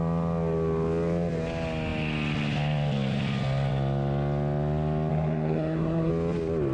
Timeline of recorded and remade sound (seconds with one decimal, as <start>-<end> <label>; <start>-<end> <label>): 0.0-5.1 recorded; 5.1-6.1 remade; 6.1-6.7 recorded